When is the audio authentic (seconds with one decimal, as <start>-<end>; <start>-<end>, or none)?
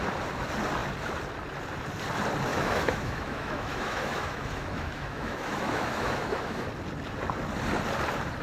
0.0-2.5; 6.7-8.4